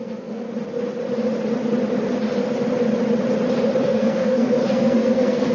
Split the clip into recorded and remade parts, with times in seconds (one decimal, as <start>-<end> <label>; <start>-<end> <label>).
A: 0.0-0.5 remade; 0.5-3.8 recorded; 3.8-5.5 remade